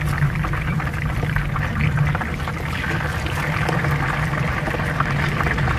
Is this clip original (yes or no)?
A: yes